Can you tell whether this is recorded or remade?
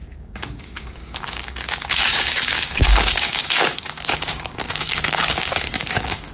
remade